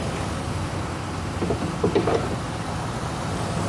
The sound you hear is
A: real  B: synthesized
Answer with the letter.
A